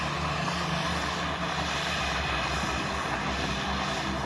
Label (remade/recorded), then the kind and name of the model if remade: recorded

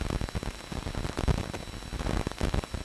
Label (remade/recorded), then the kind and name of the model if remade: recorded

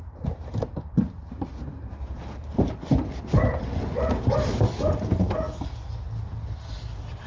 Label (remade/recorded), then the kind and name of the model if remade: recorded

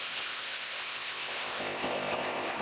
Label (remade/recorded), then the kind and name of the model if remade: remade, codec, ZipCodec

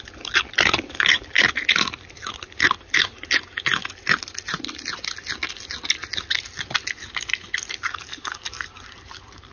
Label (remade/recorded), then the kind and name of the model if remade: recorded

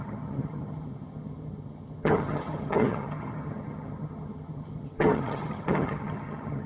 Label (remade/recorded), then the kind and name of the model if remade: remade, vocoder, HiFi-GAN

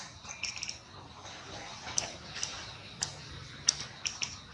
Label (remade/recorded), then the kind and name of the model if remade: recorded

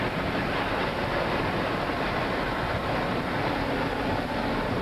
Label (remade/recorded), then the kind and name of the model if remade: recorded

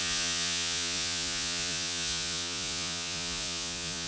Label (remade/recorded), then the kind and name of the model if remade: remade, vocoder, Vocos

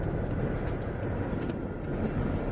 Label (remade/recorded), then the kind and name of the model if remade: recorded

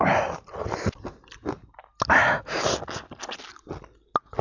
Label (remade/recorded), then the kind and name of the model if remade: recorded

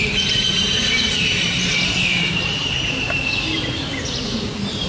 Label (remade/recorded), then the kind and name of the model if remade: remade, vocoder, BigVGAN v2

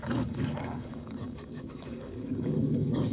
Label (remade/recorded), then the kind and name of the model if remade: remade, codec, DAC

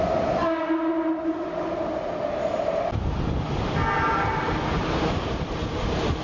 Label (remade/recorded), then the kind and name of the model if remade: recorded